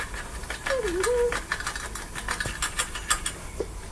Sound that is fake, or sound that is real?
real